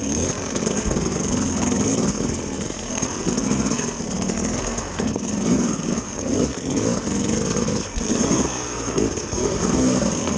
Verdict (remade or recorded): remade